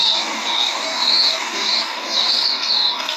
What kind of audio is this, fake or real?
fake